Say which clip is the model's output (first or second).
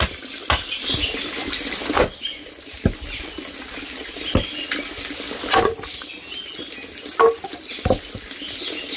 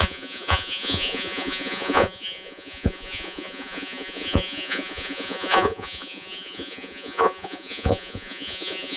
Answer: second